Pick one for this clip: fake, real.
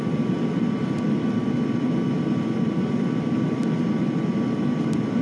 real